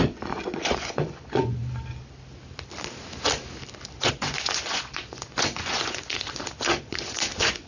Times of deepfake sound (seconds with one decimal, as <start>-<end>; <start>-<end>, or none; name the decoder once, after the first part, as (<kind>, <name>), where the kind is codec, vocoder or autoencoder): 0.0-1.6 (vocoder, Vocos); 4.0-7.7